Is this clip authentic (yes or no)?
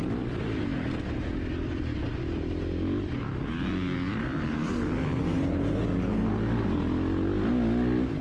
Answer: yes